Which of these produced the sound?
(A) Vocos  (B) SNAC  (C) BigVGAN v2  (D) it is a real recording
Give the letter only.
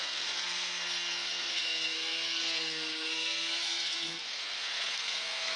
B